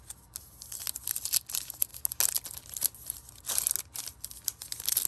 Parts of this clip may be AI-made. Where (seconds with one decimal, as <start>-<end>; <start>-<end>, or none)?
none